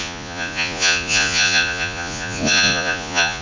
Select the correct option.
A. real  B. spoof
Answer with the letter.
B